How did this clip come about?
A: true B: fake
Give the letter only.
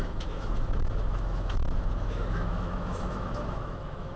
B